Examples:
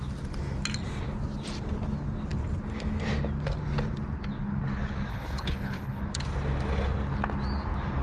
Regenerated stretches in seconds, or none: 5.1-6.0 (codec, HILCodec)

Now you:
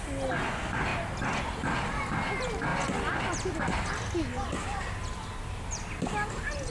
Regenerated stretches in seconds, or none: none

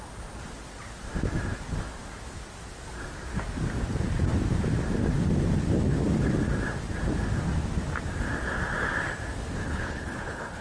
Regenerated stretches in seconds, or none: 9.6-10.6 (codec, HILCodec)